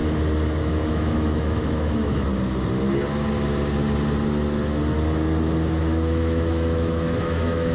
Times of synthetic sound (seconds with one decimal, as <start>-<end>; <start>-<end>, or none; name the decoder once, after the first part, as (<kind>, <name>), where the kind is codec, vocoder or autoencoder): 0.6-2.3 (autoencoder, DAC-VAE); 5.8-7.7